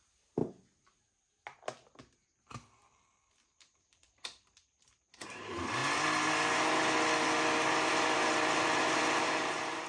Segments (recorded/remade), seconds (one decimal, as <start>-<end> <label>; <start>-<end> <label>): 0.0-0.4 remade; 0.4-3.6 recorded; 3.6-5.8 remade; 5.8-7.9 recorded; 7.9-9.9 remade